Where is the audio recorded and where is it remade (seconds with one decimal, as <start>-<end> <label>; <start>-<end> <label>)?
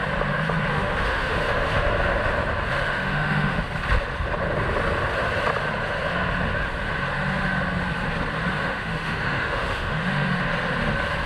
0.0-0.7 recorded; 0.7-1.9 remade; 1.9-2.7 recorded; 2.7-3.6 remade; 3.6-8.6 recorded; 8.6-10.4 remade; 10.4-11.3 recorded